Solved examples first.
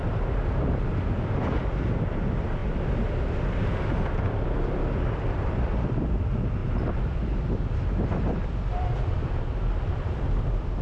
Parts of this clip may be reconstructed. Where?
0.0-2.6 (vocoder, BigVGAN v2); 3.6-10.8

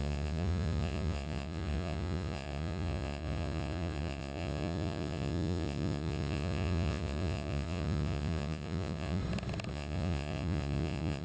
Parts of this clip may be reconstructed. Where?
0.0-9.2 (vocoder, Vocos); 9.7-11.2